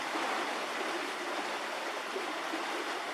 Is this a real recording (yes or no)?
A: yes